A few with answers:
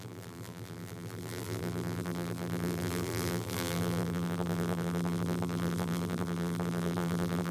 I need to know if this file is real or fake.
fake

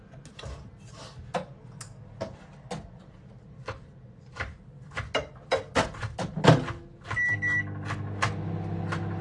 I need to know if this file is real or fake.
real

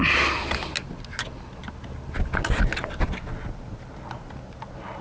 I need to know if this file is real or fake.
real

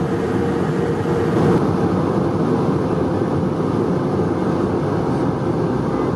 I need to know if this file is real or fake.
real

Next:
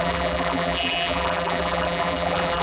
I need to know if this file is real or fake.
fake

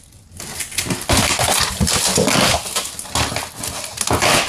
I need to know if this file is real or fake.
real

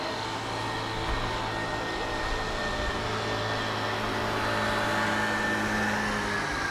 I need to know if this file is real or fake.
real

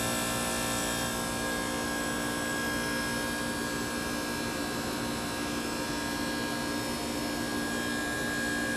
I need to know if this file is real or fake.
real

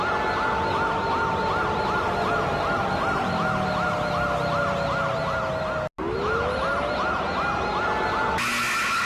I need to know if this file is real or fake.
real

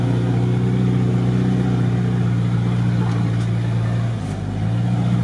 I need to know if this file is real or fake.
real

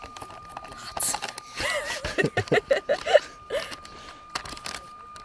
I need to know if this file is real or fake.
real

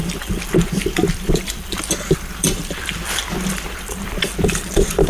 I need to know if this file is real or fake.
fake